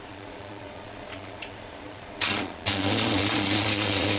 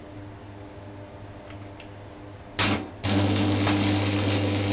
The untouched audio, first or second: second